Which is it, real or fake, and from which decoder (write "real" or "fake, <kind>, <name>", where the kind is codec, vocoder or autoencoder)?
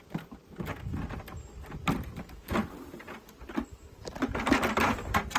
real